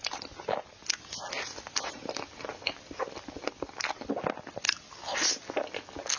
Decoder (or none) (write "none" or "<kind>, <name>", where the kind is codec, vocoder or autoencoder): none